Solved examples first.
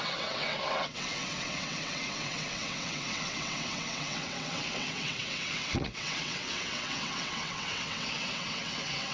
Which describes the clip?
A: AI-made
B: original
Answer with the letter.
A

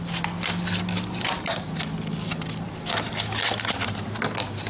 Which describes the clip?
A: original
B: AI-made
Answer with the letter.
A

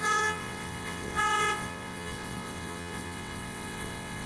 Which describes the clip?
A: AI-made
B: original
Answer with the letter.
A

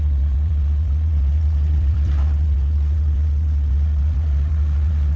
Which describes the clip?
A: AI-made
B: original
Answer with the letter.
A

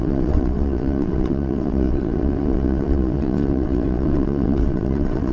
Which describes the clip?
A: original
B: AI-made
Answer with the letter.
B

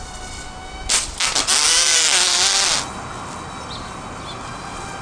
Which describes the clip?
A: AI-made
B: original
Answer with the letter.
B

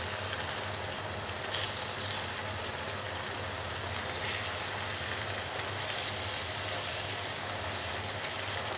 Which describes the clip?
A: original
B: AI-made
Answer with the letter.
A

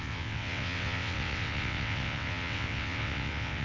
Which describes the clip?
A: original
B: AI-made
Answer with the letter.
B